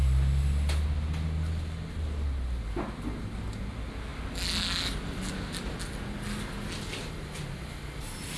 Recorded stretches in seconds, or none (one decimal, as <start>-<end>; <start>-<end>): 0.0-8.4